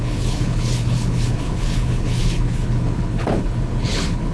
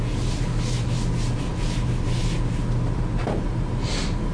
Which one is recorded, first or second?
second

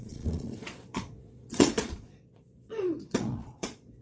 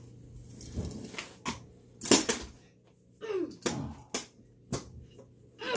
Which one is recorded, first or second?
second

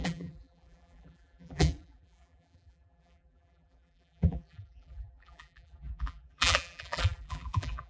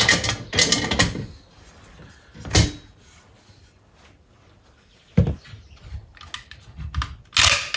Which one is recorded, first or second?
second